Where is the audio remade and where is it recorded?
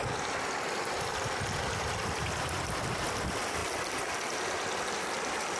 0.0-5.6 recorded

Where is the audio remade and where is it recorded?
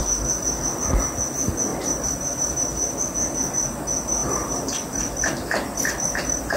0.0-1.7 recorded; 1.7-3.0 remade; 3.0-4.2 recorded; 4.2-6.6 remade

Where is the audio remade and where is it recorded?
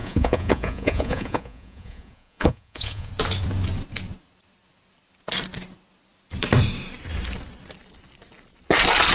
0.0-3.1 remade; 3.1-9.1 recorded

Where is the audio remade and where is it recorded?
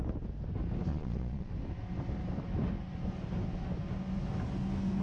0.0-0.9 recorded; 0.9-1.5 remade; 1.5-5.0 recorded